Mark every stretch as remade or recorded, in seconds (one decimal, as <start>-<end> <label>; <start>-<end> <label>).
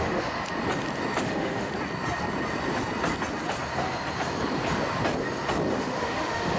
0.0-0.4 remade; 0.4-1.2 recorded; 1.2-1.7 remade; 1.7-5.7 recorded; 5.7-6.6 remade